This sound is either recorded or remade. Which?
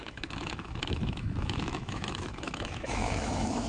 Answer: remade